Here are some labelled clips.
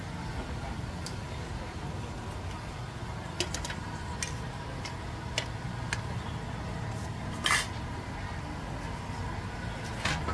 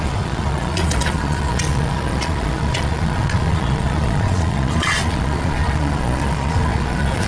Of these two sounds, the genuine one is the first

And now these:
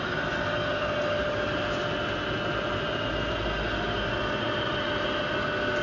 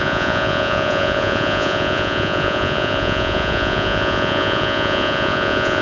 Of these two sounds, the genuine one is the first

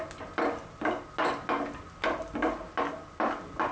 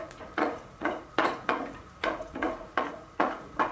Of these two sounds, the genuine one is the first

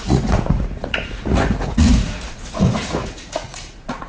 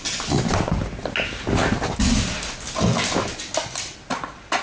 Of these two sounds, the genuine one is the second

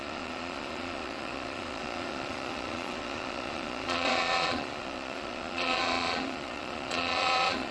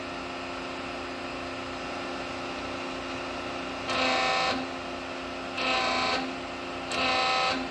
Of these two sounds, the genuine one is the second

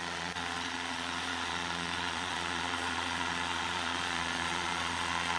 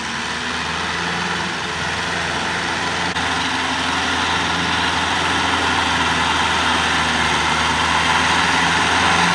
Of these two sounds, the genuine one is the second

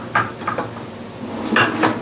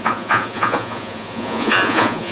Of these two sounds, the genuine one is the first